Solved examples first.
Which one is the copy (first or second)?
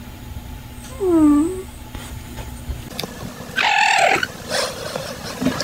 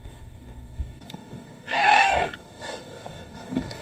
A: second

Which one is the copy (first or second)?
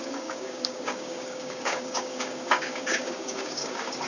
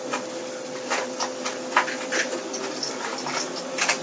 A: first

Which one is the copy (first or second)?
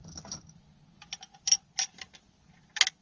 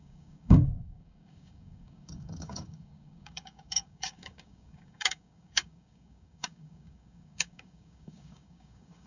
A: second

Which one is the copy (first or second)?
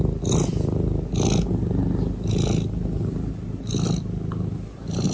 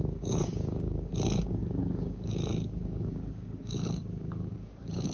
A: second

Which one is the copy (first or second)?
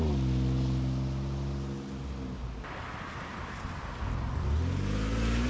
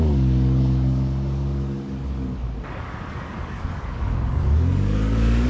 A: second